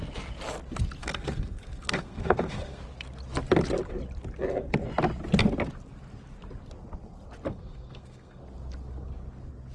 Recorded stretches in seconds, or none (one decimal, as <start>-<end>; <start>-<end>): 0.0-1.0; 2.8-7.5; 8.4-9.7